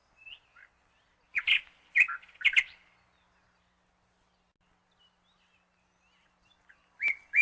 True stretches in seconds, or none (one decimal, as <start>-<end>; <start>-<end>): 0.0-7.4